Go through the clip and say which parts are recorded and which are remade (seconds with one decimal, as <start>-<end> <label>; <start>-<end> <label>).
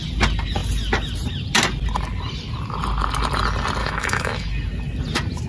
0.0-3.8 recorded; 3.8-4.5 remade; 4.5-5.5 recorded